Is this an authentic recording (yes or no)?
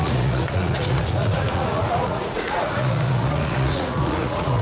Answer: no